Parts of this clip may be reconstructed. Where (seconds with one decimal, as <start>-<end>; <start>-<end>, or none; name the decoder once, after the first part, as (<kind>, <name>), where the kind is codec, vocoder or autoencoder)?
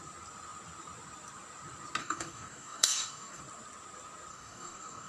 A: 2.0-3.4 (codec, DAC); 4.3-5.1